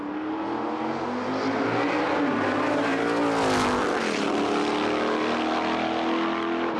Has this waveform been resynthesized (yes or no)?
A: no